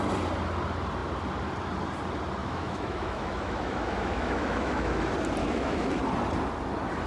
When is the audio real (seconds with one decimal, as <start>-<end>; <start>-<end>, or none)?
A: 0.0-2.4; 5.0-5.4; 6.0-7.1